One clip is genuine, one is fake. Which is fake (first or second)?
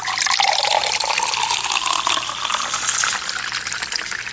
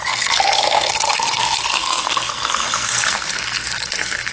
second